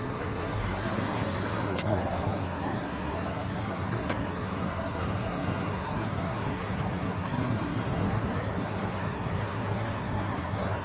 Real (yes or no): no